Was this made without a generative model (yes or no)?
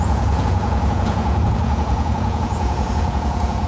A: no